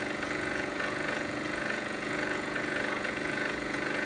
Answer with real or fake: fake